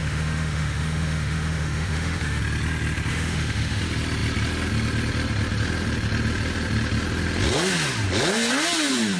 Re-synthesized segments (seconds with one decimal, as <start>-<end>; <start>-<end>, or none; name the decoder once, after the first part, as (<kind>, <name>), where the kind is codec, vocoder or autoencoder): 0.0-2.4 (autoencoder, DAC-VAE); 3.1-3.8